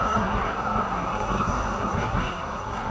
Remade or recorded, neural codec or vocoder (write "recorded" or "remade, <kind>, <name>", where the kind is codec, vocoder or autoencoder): remade, codec, SNAC